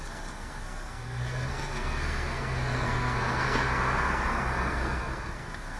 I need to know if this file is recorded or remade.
remade